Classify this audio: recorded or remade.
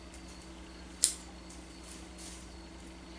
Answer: recorded